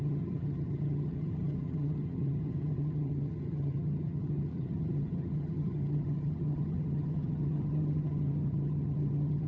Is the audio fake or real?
fake